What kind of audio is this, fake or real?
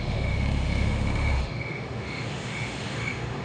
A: fake